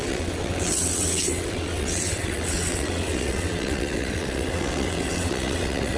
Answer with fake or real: fake